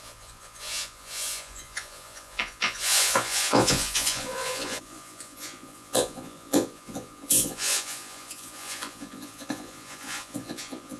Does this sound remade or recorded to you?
remade